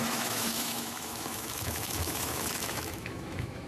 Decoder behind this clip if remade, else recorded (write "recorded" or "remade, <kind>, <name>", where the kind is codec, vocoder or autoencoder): remade, autoencoder, DAC-VAE